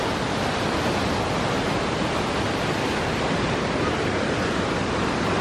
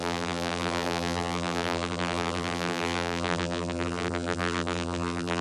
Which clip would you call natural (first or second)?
first